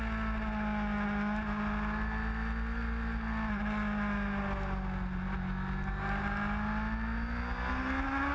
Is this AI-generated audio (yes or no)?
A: no